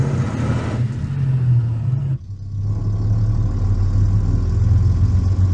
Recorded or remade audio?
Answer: recorded